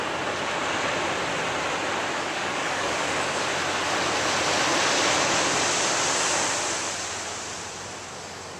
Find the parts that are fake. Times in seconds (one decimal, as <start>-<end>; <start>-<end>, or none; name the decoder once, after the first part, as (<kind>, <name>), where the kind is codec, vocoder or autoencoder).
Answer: 2.2-3.5 (codec, DAC); 8.1-8.6